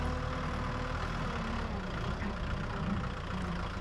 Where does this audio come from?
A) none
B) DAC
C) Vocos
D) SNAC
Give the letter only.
A